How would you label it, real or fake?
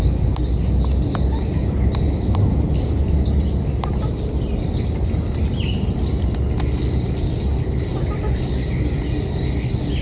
real